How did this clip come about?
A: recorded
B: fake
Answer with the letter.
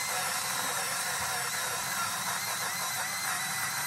B